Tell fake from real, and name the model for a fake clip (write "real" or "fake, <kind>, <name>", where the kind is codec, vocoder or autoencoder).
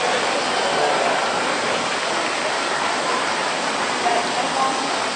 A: real